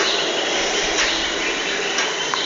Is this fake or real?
real